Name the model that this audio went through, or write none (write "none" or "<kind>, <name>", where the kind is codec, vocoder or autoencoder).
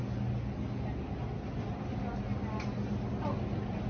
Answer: none